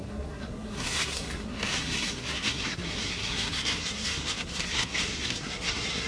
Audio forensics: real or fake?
fake